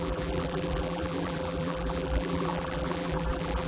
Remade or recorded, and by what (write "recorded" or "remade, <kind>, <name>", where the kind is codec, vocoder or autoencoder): remade, vocoder, BigVGAN v2